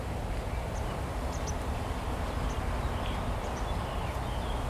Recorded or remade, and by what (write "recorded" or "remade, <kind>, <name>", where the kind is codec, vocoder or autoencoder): recorded